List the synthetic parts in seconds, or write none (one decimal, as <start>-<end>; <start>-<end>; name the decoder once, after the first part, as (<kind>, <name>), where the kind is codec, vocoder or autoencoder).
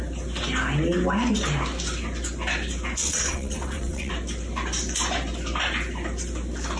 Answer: 3.0-4.1 (vocoder, WaveNeXt)